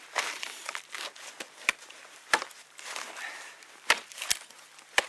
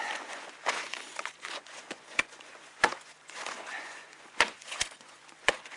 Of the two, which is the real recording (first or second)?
first